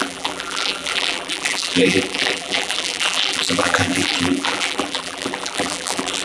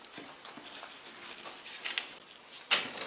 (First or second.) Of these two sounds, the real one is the second